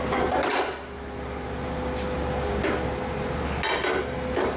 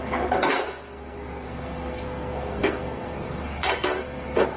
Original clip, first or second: first